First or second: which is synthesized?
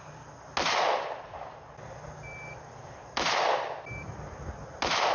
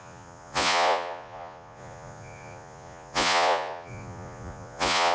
second